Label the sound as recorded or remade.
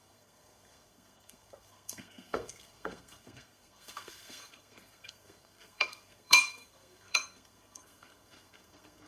remade